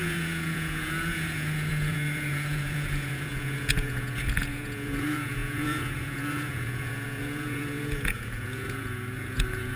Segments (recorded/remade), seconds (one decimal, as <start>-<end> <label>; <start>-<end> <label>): 0.0-9.8 remade